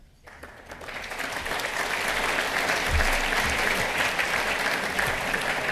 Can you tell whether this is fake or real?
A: real